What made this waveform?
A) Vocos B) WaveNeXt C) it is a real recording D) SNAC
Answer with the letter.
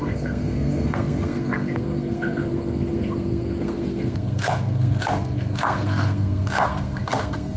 D